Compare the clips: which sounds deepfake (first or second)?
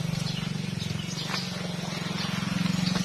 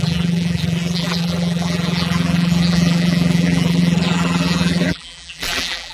second